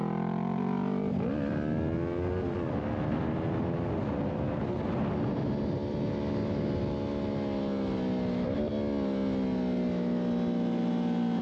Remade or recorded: recorded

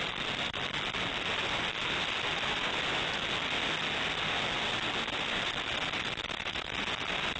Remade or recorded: recorded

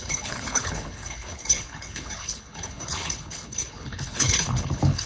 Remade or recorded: remade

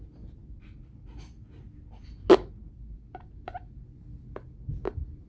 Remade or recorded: recorded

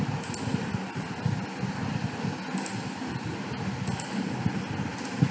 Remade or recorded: recorded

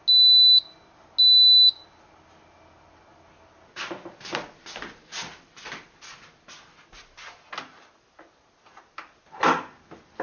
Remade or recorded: recorded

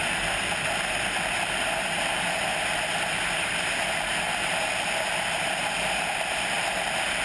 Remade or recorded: recorded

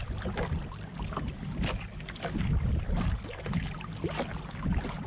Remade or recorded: recorded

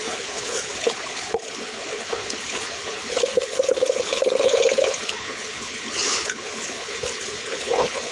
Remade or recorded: remade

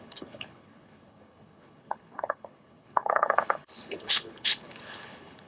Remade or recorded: remade